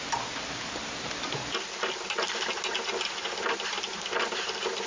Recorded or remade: recorded